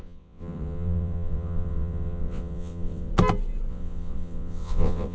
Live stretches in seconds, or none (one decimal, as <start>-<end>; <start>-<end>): 3.1-3.7